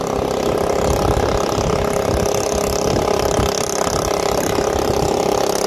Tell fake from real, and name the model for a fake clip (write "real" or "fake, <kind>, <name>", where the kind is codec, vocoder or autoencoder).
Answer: real